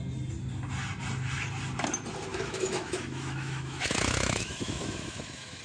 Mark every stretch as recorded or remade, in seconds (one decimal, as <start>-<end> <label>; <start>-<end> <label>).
0.0-2.3 recorded; 2.3-5.6 remade